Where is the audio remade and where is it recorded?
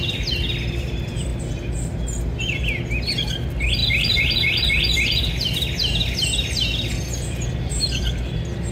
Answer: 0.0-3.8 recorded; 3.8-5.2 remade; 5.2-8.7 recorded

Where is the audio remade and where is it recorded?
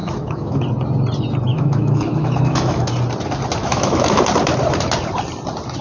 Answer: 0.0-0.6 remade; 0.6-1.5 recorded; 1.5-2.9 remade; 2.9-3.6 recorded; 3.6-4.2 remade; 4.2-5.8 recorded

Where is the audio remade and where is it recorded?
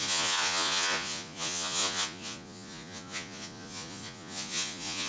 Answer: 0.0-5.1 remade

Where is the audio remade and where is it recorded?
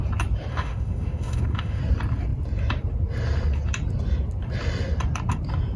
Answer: 0.0-0.5 recorded; 0.5-1.8 remade; 1.8-5.8 recorded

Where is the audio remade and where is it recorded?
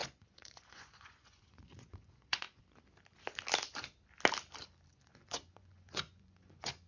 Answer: 0.0-2.6 remade; 2.6-4.9 recorded; 4.9-6.9 remade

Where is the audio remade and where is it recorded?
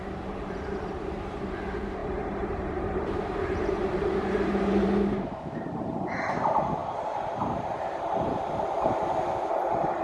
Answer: 0.0-10.0 remade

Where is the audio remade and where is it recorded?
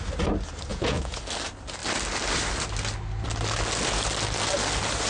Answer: 0.0-0.7 recorded; 0.7-1.2 remade; 1.2-5.1 recorded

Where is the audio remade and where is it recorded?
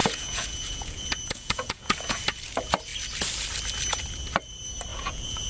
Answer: 0.0-2.2 remade; 2.2-4.9 recorded; 4.9-5.5 remade